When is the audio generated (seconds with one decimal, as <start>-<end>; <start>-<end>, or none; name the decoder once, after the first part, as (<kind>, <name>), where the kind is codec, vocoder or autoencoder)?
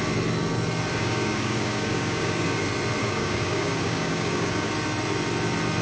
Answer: 0.9-2.6 (codec, DAC); 3.0-4.7